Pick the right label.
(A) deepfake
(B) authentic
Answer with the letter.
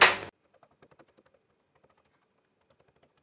B